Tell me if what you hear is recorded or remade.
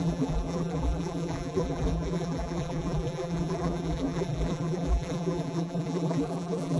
remade